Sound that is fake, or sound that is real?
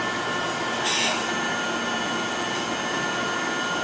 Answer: real